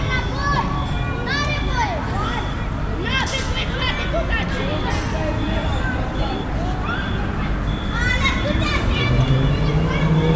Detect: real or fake real